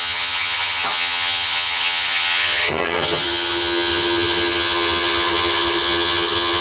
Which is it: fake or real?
fake